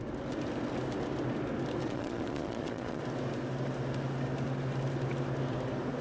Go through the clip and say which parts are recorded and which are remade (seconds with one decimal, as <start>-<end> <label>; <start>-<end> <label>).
0.0-1.8 recorded; 1.8-3.0 remade; 3.0-6.0 recorded